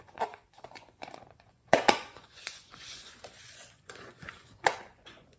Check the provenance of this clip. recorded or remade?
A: remade